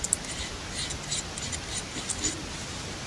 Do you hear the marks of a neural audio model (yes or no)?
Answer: no